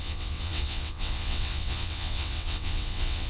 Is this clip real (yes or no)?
no